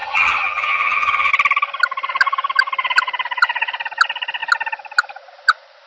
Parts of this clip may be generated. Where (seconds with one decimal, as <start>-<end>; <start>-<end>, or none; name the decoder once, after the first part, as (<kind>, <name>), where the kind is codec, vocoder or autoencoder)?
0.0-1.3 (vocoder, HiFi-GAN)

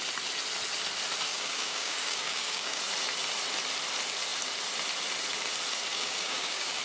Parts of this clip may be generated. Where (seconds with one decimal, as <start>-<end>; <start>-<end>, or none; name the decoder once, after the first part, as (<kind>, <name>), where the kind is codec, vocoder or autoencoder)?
1.3-2.8 (codec, DAC); 5.9-6.8

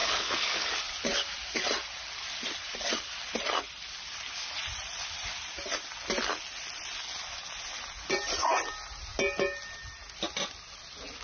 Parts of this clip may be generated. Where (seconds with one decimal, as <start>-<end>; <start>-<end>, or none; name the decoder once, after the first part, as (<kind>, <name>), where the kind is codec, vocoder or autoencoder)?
0.0-0.7 (codec, HILCodec)